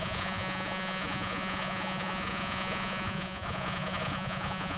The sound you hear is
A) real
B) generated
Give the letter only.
B